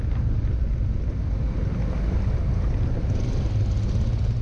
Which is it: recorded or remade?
recorded